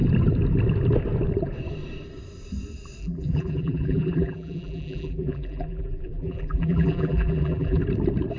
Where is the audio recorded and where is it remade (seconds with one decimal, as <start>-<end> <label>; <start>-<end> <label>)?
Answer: 0.0-3.0 recorded; 3.0-7.8 remade; 7.8-8.4 recorded